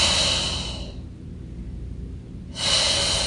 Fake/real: real